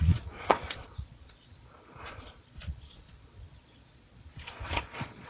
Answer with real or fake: fake